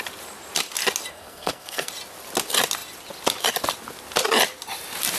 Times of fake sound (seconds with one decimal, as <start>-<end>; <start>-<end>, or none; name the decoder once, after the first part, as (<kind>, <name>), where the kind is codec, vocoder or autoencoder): 1.1-1.9 (codec, SNAC)

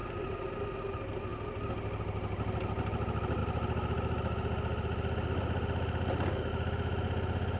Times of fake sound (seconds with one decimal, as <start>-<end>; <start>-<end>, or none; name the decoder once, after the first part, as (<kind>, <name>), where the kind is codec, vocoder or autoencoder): 0.0-0.6 (vocoder, BigVGAN v2)

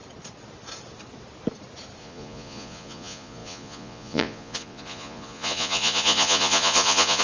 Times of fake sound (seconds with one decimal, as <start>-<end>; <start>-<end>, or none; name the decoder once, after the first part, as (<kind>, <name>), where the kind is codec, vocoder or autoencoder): 2.0-7.2 (vocoder, Vocos)